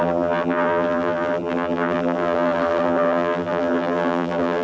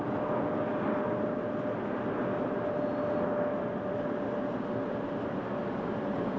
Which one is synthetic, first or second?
first